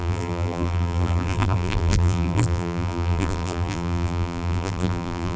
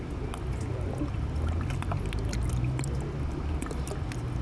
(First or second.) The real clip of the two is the second